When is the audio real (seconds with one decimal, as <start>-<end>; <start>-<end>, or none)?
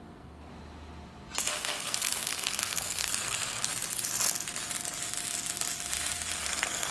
0.5-1.5; 3.7-6.4